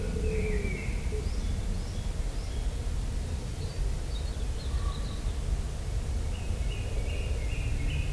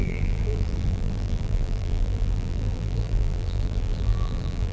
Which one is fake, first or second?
second